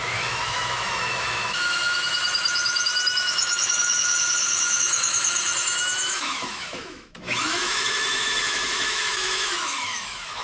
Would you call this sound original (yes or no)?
no